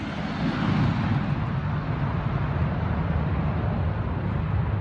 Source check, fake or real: real